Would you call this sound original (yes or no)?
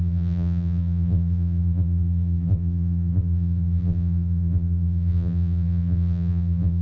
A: no